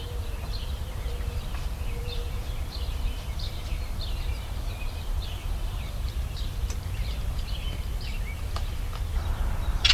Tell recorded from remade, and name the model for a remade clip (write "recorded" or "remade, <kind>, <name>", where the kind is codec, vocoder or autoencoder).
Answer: remade, vocoder, BigVGAN v2